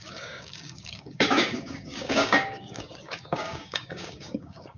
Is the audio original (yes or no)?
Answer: no